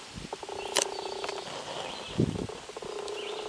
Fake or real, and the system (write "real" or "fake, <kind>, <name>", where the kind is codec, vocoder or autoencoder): real